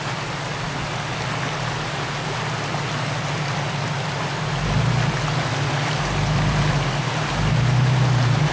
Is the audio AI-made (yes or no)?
no